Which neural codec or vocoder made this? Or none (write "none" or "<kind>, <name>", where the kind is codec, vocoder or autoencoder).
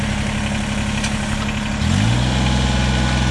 none